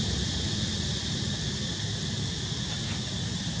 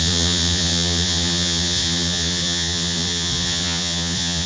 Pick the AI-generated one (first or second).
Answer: second